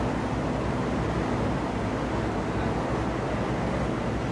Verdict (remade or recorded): recorded